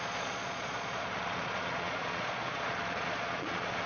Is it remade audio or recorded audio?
remade